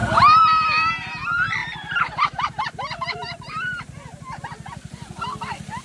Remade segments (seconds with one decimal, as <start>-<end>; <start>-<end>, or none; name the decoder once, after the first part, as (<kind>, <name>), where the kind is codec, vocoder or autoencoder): 0.0-0.9 (vocoder, BigVGAN v2); 1.6-4.4